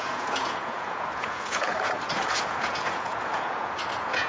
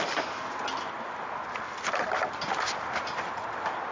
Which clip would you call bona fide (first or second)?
second